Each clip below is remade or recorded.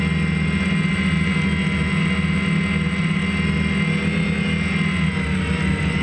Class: recorded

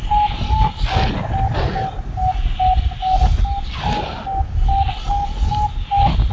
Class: recorded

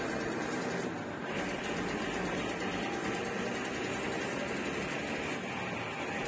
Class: recorded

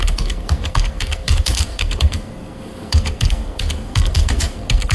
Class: remade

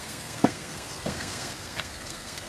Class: remade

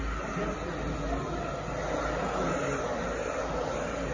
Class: recorded